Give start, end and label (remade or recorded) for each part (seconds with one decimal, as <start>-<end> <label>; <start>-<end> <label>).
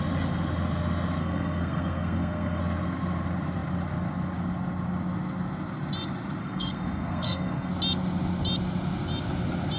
0.0-1.2 recorded; 1.2-2.6 remade; 2.6-6.4 recorded; 6.4-7.7 remade; 7.7-9.8 recorded